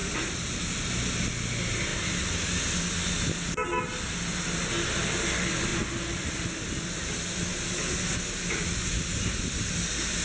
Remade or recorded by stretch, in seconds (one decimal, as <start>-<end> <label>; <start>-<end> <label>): 0.0-10.2 recorded